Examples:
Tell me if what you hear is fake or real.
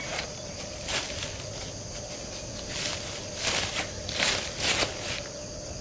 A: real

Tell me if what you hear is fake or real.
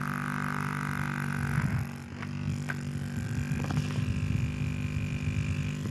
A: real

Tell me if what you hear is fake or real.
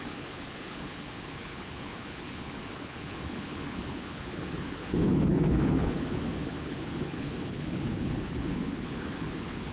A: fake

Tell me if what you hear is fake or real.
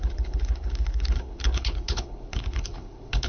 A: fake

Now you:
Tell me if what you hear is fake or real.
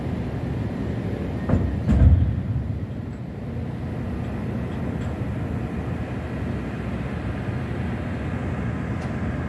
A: real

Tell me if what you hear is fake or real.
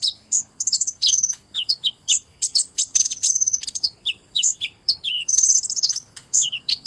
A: fake